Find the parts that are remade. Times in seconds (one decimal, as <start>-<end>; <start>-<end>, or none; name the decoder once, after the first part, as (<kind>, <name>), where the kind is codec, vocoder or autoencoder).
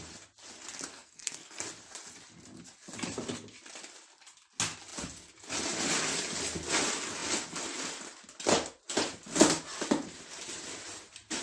0.9-1.6 (codec, SNAC)